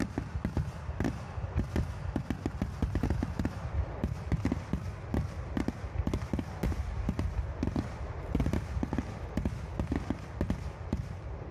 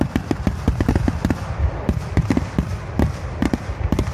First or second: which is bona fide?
first